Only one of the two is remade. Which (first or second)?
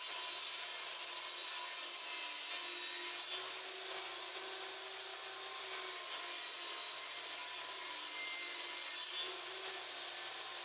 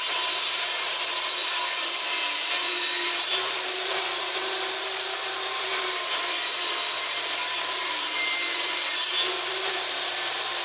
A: second